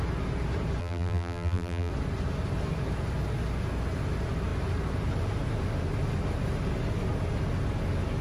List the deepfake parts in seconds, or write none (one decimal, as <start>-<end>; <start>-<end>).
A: 0.8-1.9

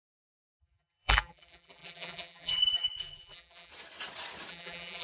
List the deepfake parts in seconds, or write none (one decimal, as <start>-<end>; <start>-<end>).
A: 0.0-3.7; 4.5-5.0

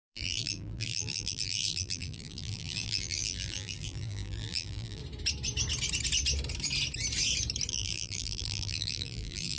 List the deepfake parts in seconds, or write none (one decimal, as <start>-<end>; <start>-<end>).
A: 0.0-5.0; 7.7-9.6

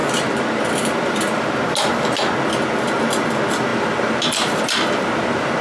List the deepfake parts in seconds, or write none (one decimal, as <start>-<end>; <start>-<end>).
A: 0.0-1.5; 3.7-5.6

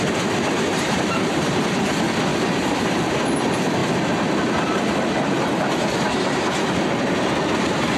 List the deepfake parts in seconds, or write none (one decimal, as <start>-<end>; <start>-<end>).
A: 0.7-1.6; 2.3-3.1